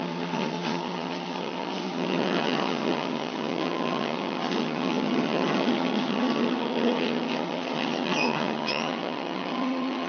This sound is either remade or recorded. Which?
remade